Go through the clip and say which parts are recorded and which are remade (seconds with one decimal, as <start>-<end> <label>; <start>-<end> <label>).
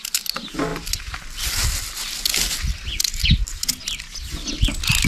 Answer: 0.0-5.1 recorded